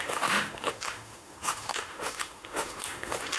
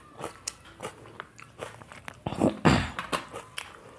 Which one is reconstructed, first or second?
first